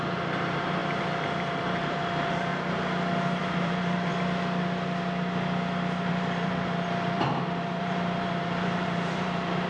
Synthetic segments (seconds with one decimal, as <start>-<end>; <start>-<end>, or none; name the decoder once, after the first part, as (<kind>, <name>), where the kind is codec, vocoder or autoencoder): 0.0-2.5 (vocoder, BigVGAN v2); 3.4-4.1; 6.1-9.7